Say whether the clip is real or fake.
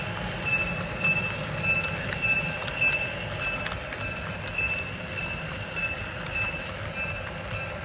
real